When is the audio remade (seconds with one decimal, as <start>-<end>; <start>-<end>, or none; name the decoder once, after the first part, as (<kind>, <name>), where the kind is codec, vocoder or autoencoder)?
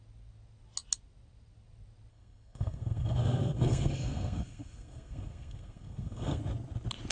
2.1-6.4 (codec, SNAC)